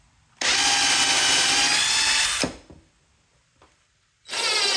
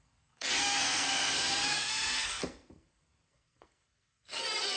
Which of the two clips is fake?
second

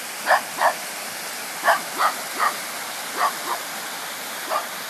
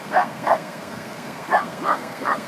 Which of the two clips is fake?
second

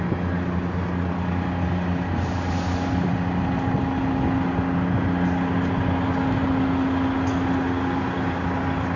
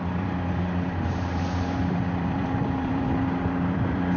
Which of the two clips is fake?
second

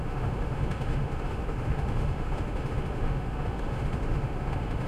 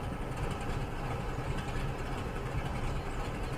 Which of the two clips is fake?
first